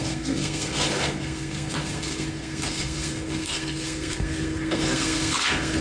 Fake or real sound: fake